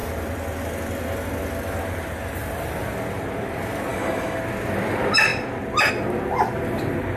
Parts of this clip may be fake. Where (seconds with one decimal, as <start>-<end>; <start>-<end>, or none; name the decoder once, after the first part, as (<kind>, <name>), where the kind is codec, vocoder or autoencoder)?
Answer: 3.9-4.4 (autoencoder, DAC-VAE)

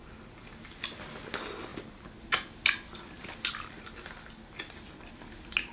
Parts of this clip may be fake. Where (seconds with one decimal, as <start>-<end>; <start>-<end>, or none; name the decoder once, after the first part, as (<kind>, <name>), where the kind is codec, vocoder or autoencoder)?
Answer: none

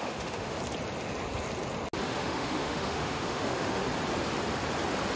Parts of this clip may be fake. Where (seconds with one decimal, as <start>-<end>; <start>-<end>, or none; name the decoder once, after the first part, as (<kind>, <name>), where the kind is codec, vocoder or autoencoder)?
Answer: 0.0-0.6 (autoencoder, DAC-VAE); 2.0-3.8

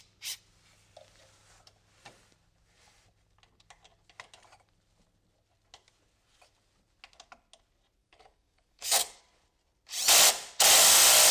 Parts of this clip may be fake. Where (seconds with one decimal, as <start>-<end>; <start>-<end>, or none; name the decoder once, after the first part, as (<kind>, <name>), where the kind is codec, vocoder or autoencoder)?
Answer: 8.0-9.2 (codec, DAC)

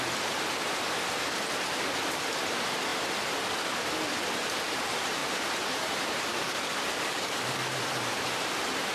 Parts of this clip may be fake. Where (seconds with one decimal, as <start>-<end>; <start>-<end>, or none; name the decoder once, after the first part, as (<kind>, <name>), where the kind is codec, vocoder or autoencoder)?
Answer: 6.3-7.8 (codec, DAC)

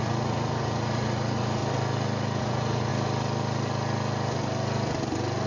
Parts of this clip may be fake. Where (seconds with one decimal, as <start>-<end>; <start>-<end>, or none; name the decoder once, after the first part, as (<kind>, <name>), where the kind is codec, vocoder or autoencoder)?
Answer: 0.0-1.6 (vocoder, Vocos); 2.4-2.9

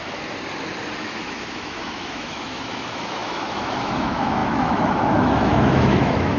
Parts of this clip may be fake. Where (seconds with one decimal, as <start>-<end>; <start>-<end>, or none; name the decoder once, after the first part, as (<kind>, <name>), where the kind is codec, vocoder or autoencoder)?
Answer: 1.0-6.4 (autoencoder, DAC-VAE)